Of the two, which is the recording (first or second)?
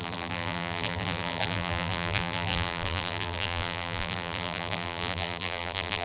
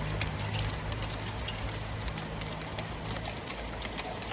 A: second